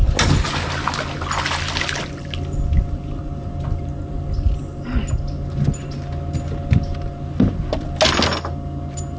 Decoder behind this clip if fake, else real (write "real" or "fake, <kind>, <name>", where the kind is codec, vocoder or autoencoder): real